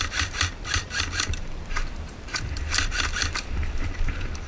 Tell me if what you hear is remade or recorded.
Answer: remade